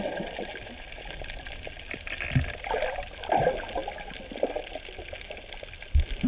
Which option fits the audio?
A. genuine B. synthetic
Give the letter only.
A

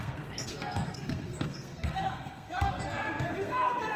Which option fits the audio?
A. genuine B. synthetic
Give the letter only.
B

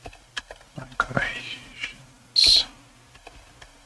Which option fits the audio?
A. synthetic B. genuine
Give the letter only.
B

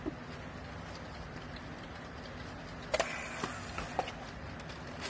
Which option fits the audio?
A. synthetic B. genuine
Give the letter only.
B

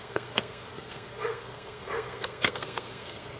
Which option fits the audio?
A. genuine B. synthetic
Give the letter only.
B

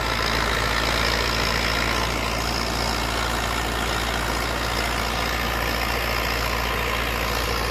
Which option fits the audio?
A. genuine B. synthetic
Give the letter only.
A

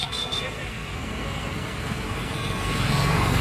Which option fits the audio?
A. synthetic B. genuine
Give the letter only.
A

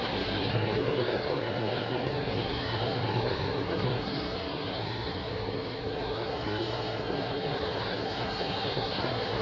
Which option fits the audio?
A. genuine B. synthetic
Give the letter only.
B